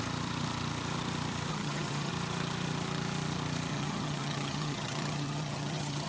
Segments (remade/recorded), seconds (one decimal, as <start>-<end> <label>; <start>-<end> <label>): 0.0-1.5 recorded; 1.5-2.1 remade; 2.1-3.7 recorded; 3.7-6.1 remade

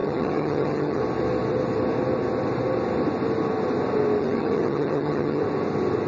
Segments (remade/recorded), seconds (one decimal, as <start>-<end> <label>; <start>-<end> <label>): 0.0-1.0 remade; 1.0-4.2 recorded; 4.2-5.4 remade; 5.4-6.1 recorded